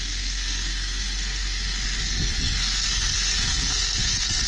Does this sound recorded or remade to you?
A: remade